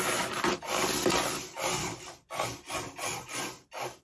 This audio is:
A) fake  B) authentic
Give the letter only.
B